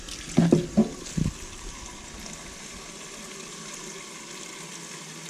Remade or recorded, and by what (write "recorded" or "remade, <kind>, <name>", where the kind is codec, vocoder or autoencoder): recorded